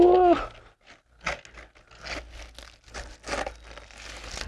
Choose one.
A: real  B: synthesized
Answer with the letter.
A